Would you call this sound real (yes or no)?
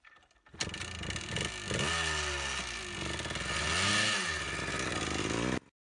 yes